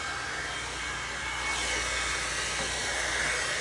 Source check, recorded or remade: recorded